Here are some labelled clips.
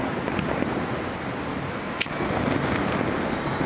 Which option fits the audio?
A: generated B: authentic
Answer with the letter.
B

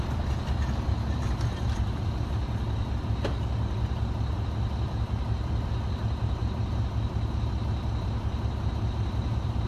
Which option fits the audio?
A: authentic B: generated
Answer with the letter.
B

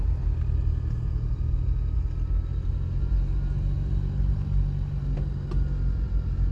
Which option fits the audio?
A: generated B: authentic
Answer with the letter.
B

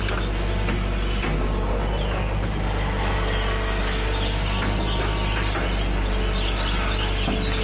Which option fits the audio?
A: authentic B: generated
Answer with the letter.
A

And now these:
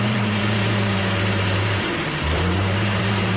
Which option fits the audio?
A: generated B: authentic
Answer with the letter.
A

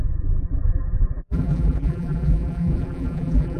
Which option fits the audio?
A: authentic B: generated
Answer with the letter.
B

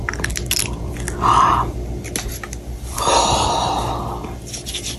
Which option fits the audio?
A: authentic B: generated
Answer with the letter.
A